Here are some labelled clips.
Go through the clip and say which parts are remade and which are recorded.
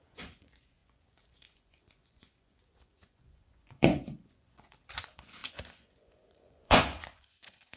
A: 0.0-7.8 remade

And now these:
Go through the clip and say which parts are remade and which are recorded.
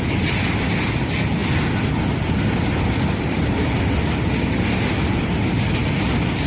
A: 0.0-6.5 recorded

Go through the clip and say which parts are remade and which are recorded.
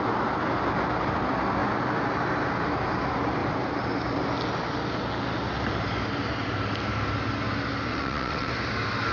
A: 0.0-7.9 recorded; 7.9-8.5 remade; 8.5-9.1 recorded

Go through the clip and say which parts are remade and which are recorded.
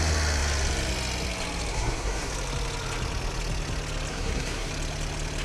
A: 0.0-1.7 recorded; 1.7-2.3 remade; 2.3-4.1 recorded; 4.1-4.7 remade; 4.7-5.4 recorded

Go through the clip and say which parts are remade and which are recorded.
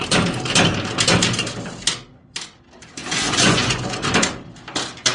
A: 0.0-3.0 recorded; 3.0-4.1 remade; 4.1-5.1 recorded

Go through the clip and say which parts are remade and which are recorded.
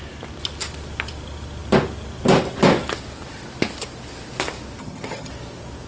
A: 0.0-4.8 recorded; 4.8-5.3 remade; 5.3-5.9 recorded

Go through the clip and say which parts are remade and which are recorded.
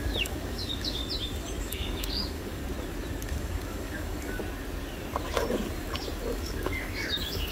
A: 0.0-1.0 remade; 1.0-1.6 recorded; 1.6-2.6 remade; 2.6-3.2 recorded; 3.2-4.4 remade; 4.4-6.3 recorded; 6.3-7.5 remade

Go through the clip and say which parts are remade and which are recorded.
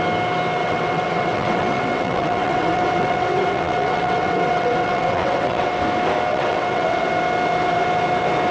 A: 0.0-0.6 recorded; 0.6-5.7 remade; 5.7-6.3 recorded; 6.3-7.1 remade; 7.1-8.5 recorded